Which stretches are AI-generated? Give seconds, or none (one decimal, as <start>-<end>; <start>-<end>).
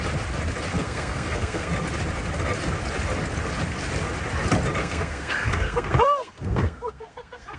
0.8-1.7; 4.8-7.6